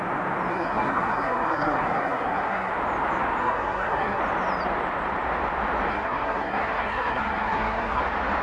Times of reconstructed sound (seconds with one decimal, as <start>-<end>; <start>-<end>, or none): 0.5-2.7; 3.4-4.2; 5.9-8.0